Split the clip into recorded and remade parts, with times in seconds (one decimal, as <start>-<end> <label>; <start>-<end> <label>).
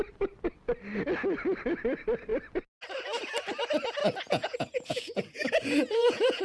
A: 0.0-4.0 recorded; 4.0-6.4 remade